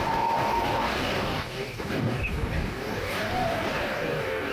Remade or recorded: remade